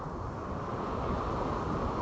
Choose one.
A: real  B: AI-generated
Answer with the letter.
A